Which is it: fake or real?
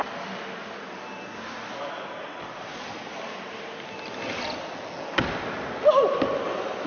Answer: real